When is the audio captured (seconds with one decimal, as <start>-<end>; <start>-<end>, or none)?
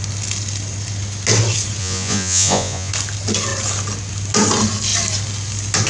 0.0-1.8; 2.9-5.9